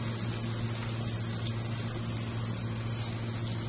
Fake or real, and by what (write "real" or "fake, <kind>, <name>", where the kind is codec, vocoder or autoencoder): real